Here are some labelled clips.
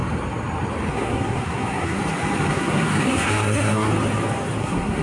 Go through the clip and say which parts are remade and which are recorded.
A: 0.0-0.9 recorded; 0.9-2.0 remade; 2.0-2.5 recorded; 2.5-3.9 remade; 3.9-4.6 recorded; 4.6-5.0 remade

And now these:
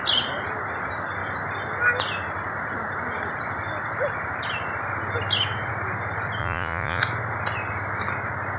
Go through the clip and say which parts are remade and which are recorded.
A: 0.0-6.4 recorded; 6.4-7.0 remade; 7.0-8.6 recorded

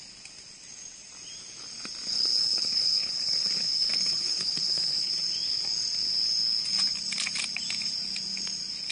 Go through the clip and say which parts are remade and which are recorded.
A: 0.0-2.1 recorded; 2.1-5.1 remade; 5.1-8.9 recorded